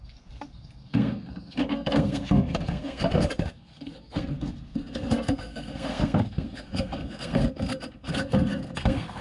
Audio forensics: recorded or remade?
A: remade